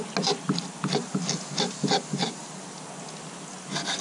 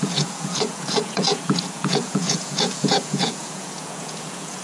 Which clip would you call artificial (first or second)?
second